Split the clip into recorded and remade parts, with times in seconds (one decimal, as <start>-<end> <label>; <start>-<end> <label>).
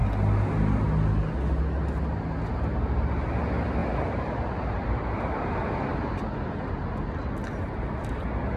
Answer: 0.0-3.8 recorded; 3.8-6.7 remade; 6.7-8.6 recorded